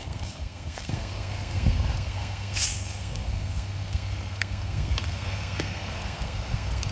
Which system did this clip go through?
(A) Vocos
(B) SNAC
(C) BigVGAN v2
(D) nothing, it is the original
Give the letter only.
B